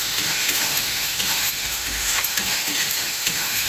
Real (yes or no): no